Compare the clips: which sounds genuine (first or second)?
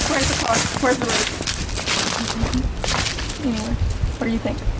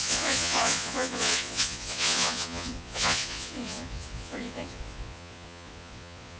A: first